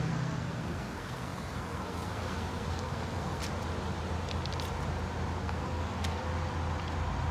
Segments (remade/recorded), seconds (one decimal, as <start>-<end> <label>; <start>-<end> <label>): 0.0-3.4 remade; 3.4-5.4 recorded; 5.4-6.2 remade; 6.2-7.3 recorded